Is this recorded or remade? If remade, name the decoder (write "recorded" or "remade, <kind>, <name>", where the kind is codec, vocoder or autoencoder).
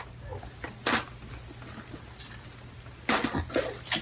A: recorded